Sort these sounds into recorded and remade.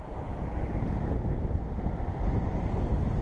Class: recorded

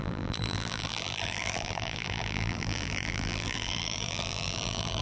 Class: remade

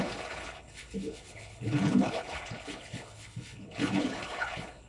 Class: remade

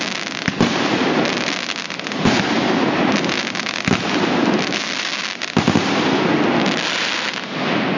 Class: recorded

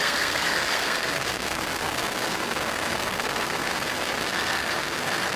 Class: remade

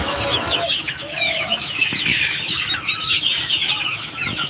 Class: remade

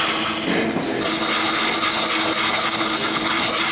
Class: recorded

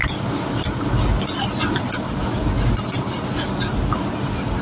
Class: recorded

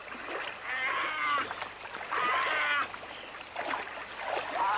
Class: recorded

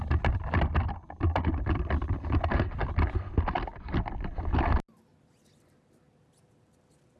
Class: recorded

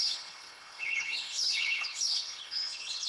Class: remade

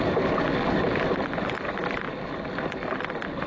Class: recorded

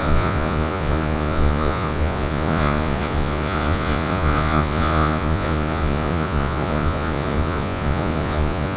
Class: remade